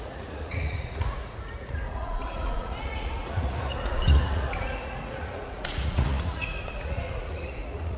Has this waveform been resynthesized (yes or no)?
yes